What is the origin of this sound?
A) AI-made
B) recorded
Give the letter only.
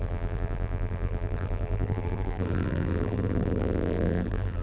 A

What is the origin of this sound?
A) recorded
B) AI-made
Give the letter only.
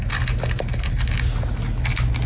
A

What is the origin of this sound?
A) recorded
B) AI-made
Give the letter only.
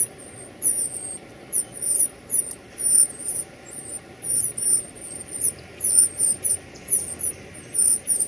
B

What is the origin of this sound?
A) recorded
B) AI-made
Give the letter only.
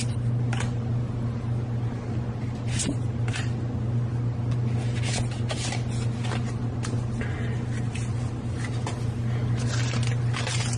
A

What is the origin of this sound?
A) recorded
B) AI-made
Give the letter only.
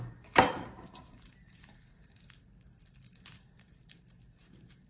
B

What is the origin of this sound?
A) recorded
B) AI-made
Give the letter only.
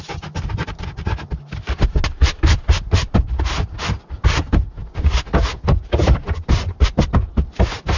A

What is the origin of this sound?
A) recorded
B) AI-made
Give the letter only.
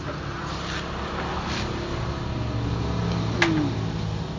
A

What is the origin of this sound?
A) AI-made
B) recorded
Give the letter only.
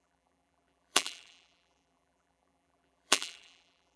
A